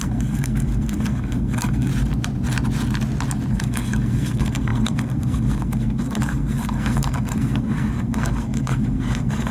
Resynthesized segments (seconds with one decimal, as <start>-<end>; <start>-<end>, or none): 0.0-1.9; 3.5-9.5